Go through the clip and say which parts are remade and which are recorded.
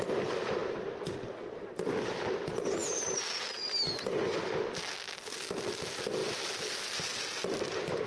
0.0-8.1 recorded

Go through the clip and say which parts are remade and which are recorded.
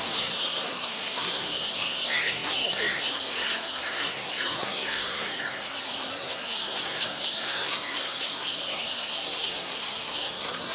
0.0-10.7 remade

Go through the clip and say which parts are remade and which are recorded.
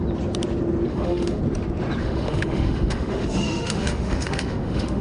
0.0-0.9 recorded; 0.9-1.4 remade; 1.4-2.0 recorded; 2.0-5.0 remade